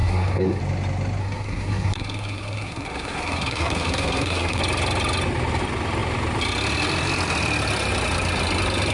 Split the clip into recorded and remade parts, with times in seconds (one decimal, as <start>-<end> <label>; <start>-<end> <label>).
0.0-0.6 remade; 0.6-1.2 recorded; 1.2-4.6 remade; 4.6-8.9 recorded